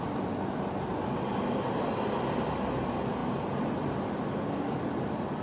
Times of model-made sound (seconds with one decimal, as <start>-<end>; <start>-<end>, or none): none